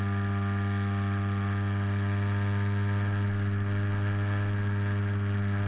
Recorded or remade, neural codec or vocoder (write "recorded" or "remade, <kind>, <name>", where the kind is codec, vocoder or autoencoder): recorded